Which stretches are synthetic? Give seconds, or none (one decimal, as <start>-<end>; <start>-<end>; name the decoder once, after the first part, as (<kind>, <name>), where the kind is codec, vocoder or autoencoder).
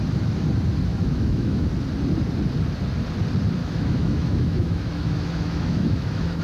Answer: 0.9-1.7 (autoencoder, DAC-VAE); 3.6-6.4